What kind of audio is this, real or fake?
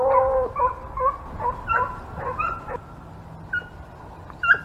real